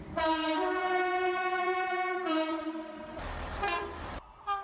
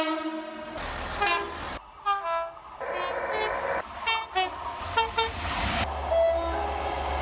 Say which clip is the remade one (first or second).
first